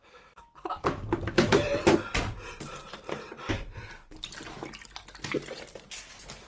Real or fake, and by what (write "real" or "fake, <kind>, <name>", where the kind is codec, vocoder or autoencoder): real